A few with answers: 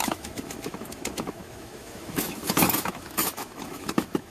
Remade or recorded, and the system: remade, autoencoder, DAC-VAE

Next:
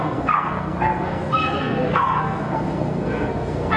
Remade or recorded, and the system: remade, codec, SNAC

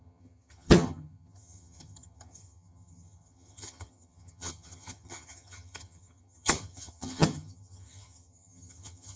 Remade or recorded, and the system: remade, vocoder, HiFi-GAN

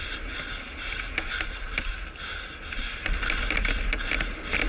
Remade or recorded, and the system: recorded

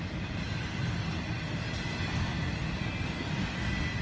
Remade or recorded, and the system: recorded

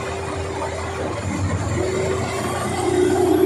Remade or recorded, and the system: recorded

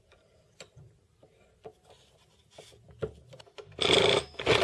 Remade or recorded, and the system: recorded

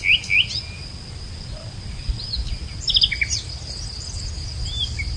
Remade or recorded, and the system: recorded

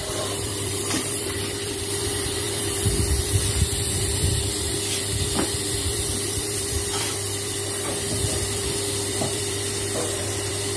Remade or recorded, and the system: remade, vocoder, BigVGAN v2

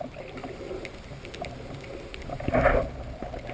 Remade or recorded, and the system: recorded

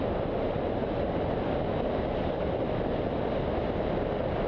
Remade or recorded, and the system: recorded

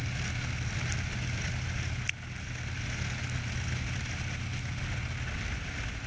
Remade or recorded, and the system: recorded